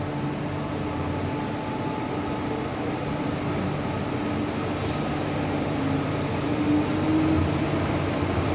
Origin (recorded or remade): recorded